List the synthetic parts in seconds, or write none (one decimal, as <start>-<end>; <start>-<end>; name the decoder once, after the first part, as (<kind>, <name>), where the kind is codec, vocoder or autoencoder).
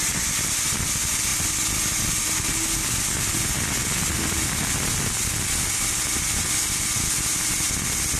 none